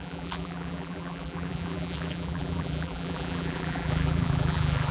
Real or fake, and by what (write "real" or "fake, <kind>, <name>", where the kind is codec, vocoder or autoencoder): fake, vocoder, BigVGAN v2